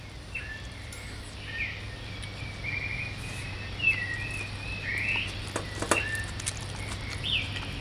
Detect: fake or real fake